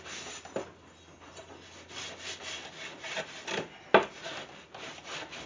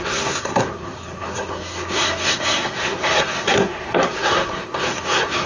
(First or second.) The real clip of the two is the first